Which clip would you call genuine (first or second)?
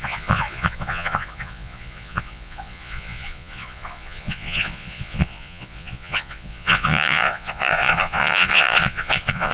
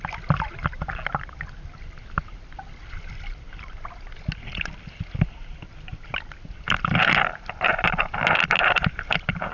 second